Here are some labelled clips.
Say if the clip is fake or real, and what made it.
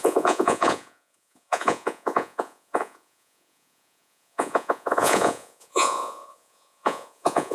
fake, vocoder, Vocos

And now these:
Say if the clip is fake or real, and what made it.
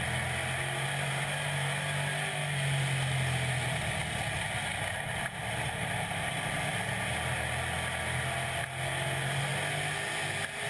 real